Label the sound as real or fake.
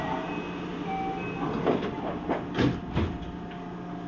real